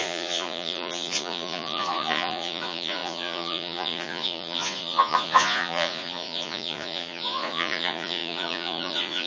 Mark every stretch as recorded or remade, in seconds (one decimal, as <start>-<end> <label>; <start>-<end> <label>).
0.0-9.3 remade

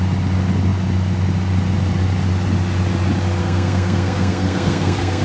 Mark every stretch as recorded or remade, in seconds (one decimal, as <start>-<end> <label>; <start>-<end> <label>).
0.0-3.4 recorded; 3.4-5.2 remade

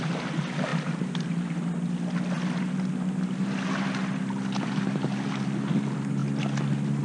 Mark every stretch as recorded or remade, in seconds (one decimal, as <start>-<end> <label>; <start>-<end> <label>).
0.0-7.0 recorded

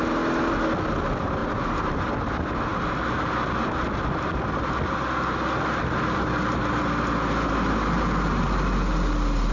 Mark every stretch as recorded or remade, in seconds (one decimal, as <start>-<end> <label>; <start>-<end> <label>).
0.0-9.5 recorded

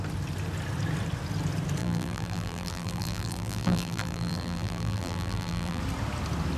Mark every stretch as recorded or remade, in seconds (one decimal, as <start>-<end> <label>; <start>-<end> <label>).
0.0-1.8 recorded; 1.8-5.8 remade; 5.8-6.6 recorded

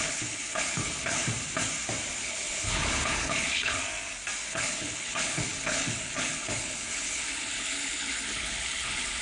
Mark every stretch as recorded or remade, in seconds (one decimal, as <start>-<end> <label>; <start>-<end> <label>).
0.0-1.2 remade; 1.2-2.2 recorded; 2.2-3.8 remade; 3.8-4.5 recorded; 4.5-9.2 remade

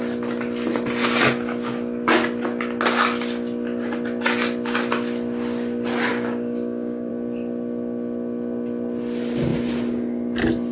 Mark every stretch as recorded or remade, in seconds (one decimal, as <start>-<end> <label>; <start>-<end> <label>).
0.0-6.1 recorded; 6.1-7.1 remade; 7.1-10.7 recorded